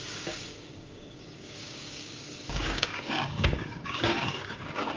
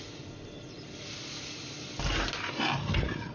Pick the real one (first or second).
second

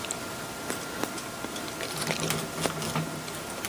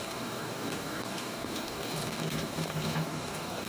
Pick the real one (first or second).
first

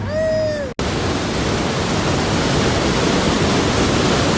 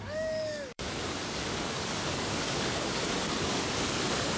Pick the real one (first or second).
first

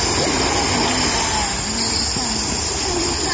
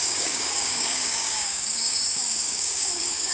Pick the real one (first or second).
first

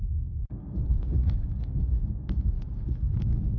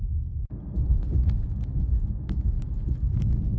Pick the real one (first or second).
second